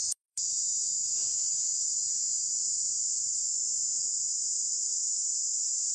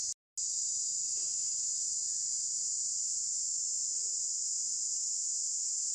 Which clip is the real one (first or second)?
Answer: second